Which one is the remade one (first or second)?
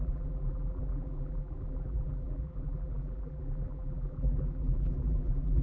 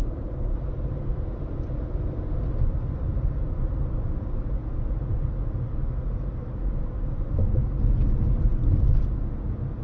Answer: first